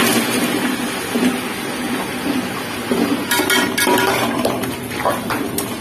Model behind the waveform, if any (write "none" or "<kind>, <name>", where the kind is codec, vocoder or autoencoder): none